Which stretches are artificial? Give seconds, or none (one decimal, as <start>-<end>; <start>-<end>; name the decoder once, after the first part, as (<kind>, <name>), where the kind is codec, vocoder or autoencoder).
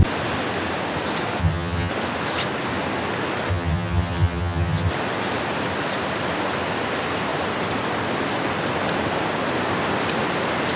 1.4-1.9 (vocoder, HiFi-GAN); 3.5-4.9